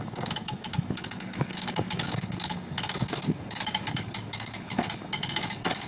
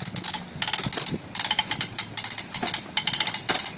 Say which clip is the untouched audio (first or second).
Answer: second